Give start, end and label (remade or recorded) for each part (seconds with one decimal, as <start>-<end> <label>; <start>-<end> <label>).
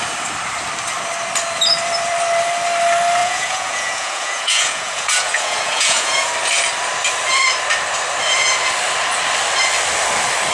0.0-3.2 recorded; 3.2-6.3 remade; 6.3-10.5 recorded